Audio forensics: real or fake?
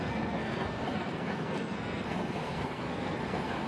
fake